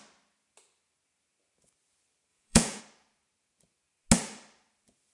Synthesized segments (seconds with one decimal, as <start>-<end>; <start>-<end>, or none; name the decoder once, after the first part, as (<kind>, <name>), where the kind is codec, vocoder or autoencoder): 2.3-2.8 (vocoder, Vocos)